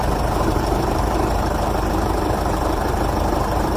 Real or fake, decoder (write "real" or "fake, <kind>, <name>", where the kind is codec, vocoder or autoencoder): fake, vocoder, BigVGAN v2